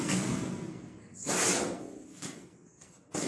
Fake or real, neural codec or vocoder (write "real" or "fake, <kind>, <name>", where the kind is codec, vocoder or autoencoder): fake, codec, SNAC